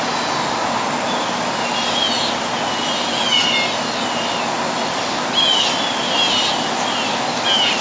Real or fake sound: real